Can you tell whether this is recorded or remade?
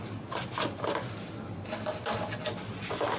recorded